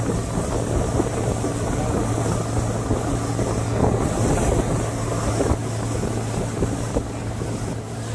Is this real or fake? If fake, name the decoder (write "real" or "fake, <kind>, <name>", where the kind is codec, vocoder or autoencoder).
real